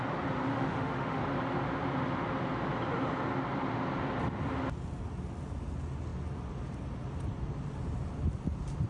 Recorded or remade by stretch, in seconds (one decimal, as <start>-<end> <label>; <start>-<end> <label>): 0.0-0.5 recorded; 0.5-1.2 remade; 1.2-8.9 recorded

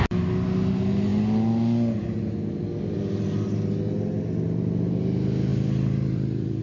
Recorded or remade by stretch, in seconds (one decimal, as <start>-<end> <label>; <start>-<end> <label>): 0.0-5.5 recorded; 5.5-6.6 remade

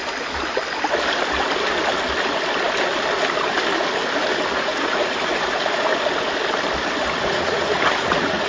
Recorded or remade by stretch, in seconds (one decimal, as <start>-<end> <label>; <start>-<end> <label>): 0.0-4.6 recorded; 4.6-5.9 remade; 5.9-7.2 recorded; 7.2-8.5 remade

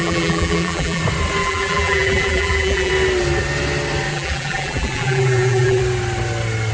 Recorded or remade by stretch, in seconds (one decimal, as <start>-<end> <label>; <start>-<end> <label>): 0.0-1.0 remade; 1.0-1.4 recorded; 1.4-2.9 remade; 2.9-4.1 recorded; 4.1-5.8 remade; 5.8-6.7 recorded

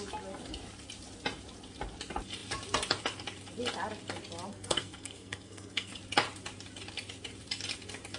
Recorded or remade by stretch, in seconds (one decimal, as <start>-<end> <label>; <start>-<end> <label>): 0.0-4.5 recorded; 4.5-5.9 remade; 5.9-8.2 recorded

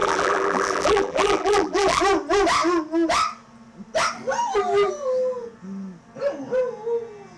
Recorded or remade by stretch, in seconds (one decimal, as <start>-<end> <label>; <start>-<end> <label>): 0.0-2.0 remade; 2.0-7.4 recorded

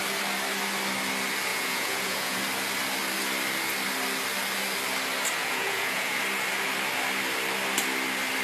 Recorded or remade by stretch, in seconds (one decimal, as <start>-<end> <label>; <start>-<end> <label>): 0.0-1.5 recorded; 1.5-2.4 remade; 2.4-5.4 recorded; 5.4-6.2 remade; 6.2-8.4 recorded

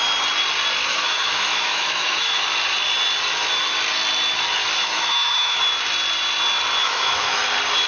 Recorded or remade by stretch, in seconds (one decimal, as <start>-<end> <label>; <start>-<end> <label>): 0.0-0.9 recorded; 0.9-2.4 remade; 2.4-4.8 recorded; 4.8-5.6 remade; 5.6-6.8 recorded; 6.8-7.4 remade; 7.4-7.9 recorded